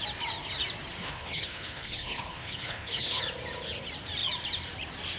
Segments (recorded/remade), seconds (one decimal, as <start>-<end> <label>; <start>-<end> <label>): 0.0-1.0 recorded; 1.0-3.2 remade; 3.2-5.2 recorded